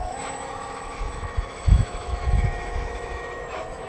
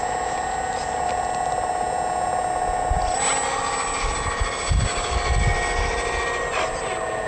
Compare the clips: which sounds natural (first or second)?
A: second